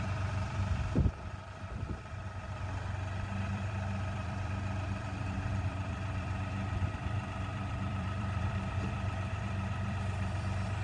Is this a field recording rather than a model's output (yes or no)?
no